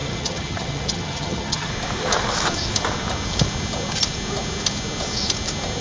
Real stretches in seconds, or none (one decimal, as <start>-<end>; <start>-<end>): 1.7-5.8

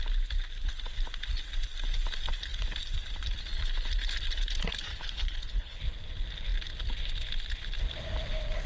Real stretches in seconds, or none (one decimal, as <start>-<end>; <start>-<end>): 0.0-4.9; 5.8-8.7

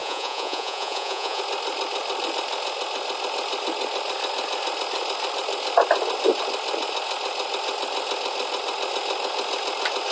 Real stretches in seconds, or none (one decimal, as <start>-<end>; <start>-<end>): 1.4-10.1

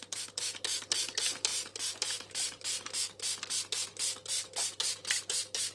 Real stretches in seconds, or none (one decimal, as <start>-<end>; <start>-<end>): 0.0-5.7

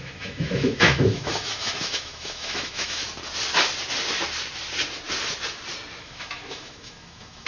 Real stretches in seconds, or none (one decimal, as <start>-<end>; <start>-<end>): 3.0-6.0

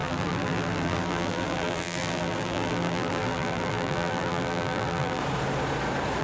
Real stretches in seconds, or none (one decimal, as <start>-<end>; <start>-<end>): 5.2-6.2